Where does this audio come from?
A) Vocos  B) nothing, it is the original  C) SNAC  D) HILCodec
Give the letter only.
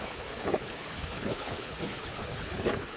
D